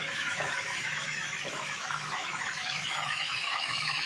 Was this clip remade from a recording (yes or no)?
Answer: yes